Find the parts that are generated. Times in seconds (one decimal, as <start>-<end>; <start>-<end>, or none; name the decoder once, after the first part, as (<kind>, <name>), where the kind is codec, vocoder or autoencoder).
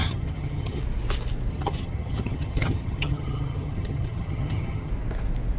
0.0-0.8 (vocoder, HiFi-GAN); 1.5-4.9